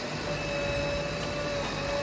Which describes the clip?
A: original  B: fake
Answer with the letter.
A